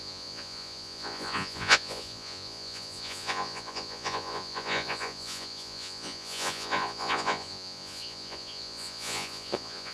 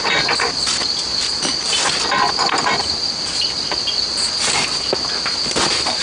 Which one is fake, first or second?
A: first